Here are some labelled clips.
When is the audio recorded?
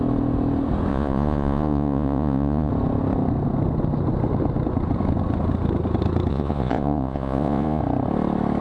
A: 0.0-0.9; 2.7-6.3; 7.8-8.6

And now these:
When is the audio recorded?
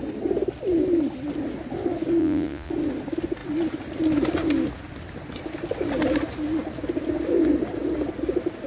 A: 0.0-2.2; 2.7-8.7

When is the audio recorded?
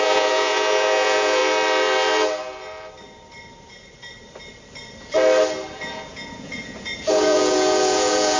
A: 1.4-5.8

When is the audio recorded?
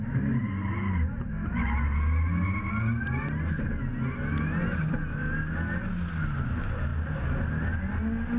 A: 0.0-8.4